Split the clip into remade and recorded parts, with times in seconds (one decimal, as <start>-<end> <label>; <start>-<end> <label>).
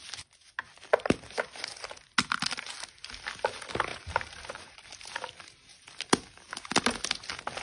0.0-3.9 recorded; 3.9-5.0 remade; 5.0-7.6 recorded